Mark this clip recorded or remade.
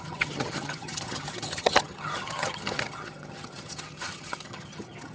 remade